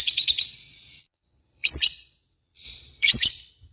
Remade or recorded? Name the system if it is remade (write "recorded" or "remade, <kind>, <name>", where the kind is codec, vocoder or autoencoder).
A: remade, vocoder, Vocos